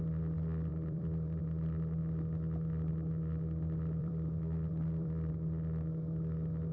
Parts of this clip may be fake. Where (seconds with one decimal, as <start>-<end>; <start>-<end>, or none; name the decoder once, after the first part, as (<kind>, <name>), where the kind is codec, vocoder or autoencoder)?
0.7-1.4 (vocoder, BigVGAN v2); 4.0-5.3